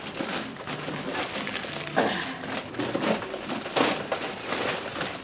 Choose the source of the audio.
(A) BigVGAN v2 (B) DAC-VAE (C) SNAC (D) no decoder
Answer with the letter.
D